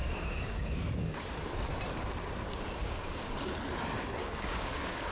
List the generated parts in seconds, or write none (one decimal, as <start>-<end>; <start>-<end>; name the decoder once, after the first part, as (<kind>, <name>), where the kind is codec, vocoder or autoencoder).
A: 0.0-1.3 (codec, DAC); 2.8-3.3; 4.2-5.1